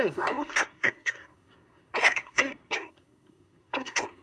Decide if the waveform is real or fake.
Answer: fake